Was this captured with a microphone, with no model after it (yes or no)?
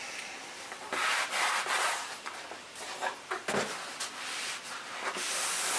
no